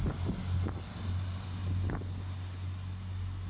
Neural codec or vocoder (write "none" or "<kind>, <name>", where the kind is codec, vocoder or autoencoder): none